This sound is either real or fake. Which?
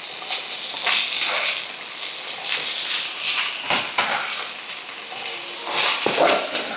real